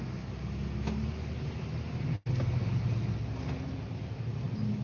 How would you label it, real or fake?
real